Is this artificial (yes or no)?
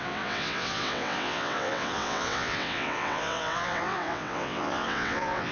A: yes